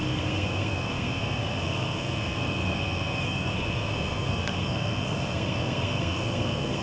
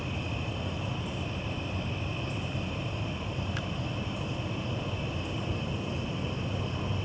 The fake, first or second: first